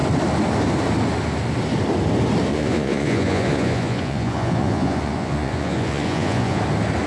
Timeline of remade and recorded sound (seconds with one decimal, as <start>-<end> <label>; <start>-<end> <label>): 0.0-2.5 recorded; 2.5-6.6 remade; 6.6-7.1 recorded